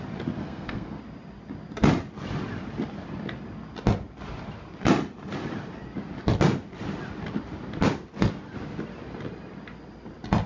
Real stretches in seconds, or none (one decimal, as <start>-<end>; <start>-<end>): 0.0-0.4; 1.0-10.5